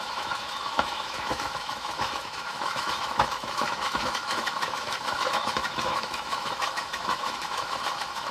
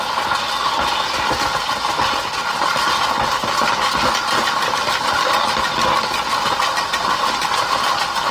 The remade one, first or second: first